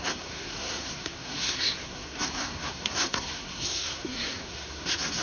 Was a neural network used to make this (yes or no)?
yes